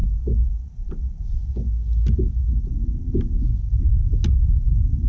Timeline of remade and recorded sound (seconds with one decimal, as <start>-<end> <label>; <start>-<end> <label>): 0.0-5.1 recorded